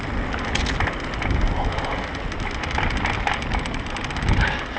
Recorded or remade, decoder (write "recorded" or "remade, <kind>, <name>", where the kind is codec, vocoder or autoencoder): recorded